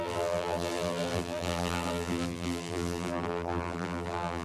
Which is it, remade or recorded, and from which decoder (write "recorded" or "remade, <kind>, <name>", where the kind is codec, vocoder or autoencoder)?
remade, vocoder, BigVGAN v2